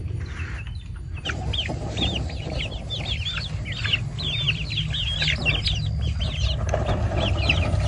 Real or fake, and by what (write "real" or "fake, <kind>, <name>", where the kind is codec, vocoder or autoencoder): real